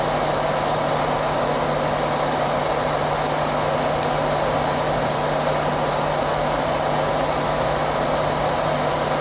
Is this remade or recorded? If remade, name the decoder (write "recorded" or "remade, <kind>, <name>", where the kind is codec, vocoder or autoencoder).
recorded